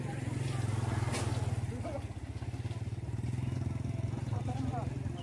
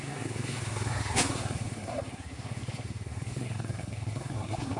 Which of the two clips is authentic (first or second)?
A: first